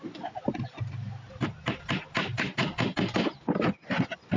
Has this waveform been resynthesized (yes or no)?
no